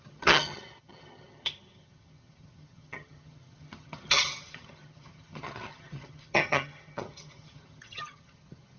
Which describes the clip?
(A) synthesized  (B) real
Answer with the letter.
A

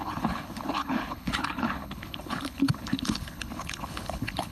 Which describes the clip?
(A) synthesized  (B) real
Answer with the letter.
A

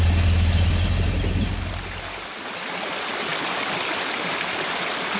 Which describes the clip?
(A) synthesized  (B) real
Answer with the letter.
B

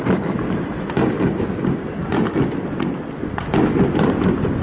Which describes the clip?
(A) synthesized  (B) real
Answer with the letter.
B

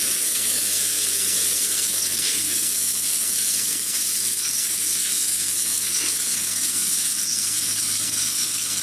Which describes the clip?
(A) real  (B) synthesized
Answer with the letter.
B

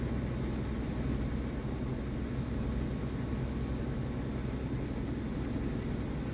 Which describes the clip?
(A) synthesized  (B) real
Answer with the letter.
B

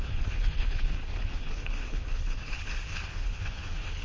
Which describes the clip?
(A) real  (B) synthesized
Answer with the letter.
B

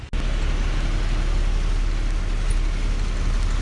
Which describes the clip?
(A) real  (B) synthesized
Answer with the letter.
A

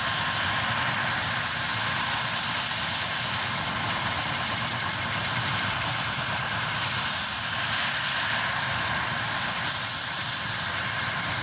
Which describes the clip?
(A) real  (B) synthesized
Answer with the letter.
B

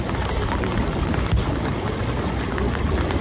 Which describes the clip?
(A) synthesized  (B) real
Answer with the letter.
B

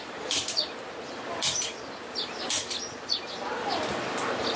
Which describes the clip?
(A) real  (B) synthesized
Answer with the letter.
A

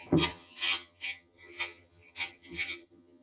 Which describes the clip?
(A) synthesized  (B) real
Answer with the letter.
A